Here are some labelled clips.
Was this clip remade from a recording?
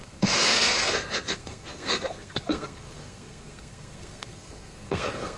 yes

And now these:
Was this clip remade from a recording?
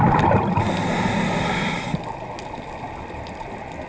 no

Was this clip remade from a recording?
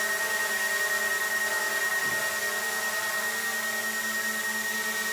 no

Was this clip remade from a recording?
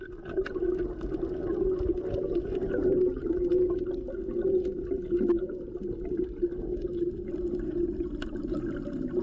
no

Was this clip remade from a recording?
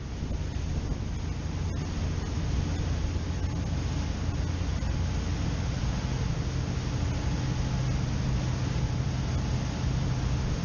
no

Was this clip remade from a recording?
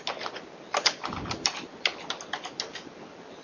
no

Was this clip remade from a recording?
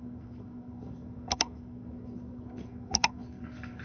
yes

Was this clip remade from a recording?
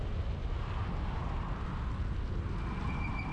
no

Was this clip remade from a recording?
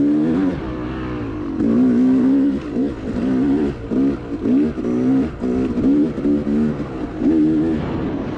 no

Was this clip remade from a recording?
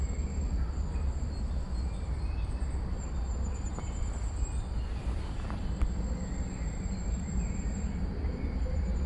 no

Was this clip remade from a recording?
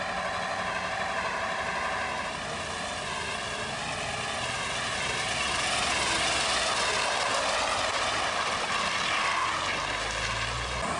no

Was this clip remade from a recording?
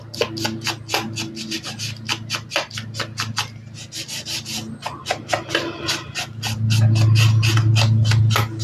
no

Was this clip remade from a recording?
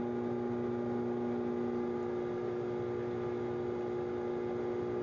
no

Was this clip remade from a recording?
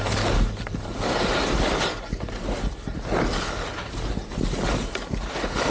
no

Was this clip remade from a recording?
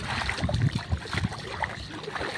no